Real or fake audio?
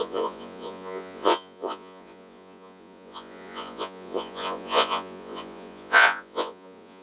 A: fake